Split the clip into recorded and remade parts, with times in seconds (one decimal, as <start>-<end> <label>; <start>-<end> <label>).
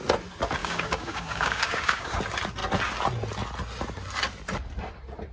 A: 0.0-0.6 recorded; 0.6-2.2 remade; 2.2-5.3 recorded